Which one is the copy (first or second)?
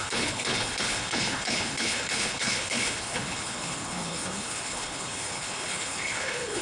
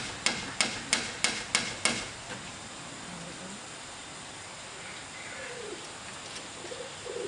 first